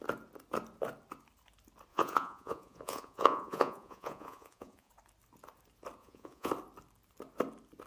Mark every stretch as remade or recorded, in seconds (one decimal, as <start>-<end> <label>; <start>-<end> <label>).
0.0-1.9 recorded; 1.9-4.9 remade; 4.9-6.0 recorded; 6.0-6.5 remade; 6.5-7.9 recorded